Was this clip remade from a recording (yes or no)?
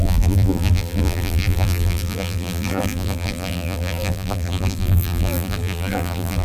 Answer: yes